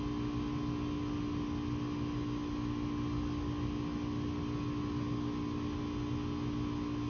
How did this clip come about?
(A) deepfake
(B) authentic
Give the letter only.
B